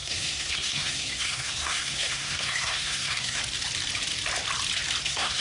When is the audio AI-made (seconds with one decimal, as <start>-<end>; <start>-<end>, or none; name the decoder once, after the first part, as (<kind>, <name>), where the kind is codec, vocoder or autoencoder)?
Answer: 0.0-3.4 (codec, SNAC); 5.0-5.4